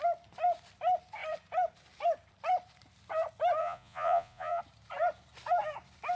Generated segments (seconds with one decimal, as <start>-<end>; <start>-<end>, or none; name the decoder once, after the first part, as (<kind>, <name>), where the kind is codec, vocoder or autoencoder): 3.6-4.6 (vocoder, Vocos)